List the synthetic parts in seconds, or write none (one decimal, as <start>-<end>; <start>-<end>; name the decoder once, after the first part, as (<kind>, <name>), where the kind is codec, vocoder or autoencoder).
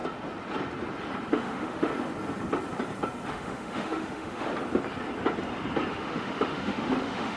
1.3-1.9 (autoencoder, DAC-VAE); 3.3-4.5; 5.9-7.4